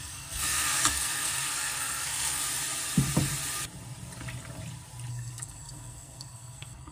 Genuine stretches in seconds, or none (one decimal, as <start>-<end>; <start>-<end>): 2.4-5.1